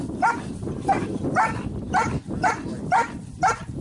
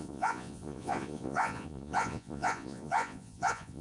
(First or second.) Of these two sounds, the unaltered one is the first